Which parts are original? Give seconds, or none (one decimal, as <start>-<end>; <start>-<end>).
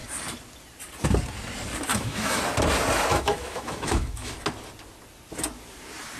0.0-1.9; 2.4-3.1; 4.3-6.2